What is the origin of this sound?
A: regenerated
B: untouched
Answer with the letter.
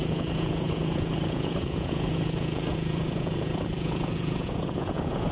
A